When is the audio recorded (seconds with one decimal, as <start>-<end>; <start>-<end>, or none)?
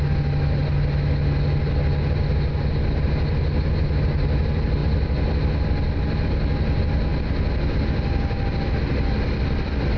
0.0-10.0